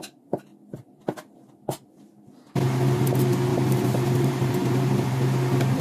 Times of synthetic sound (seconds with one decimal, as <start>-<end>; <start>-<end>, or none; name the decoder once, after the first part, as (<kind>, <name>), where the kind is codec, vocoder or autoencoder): 3.5-5.1 (vocoder, BigVGAN v2)

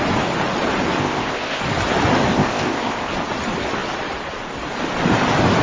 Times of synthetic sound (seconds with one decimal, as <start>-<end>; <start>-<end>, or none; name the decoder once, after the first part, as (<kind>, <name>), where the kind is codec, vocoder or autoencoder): 1.0-1.6 (codec, ZipCodec); 2.3-3.1

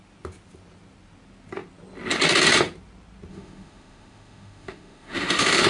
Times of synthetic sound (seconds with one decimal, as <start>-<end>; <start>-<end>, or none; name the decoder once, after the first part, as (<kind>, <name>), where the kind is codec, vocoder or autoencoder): 3.3-5.7 (autoencoder, DAC-VAE)

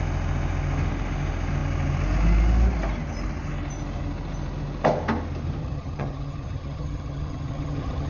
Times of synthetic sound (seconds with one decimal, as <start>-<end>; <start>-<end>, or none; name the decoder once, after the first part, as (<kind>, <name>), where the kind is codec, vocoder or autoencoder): 5.6-8.1 (vocoder, HiFi-GAN)

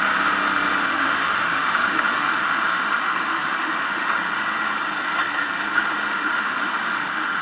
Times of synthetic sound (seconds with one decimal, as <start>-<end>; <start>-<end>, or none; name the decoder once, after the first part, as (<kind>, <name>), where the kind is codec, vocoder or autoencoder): 0.8-4.2 (autoencoder, DAC-VAE); 6.1-7.4